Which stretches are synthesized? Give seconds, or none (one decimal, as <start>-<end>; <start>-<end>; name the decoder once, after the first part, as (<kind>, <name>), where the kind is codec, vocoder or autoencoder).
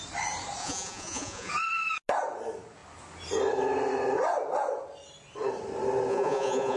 0.6-1.5 (vocoder, Vocos); 6.1-6.8